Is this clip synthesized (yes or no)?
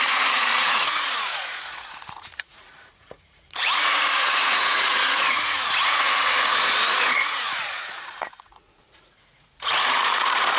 yes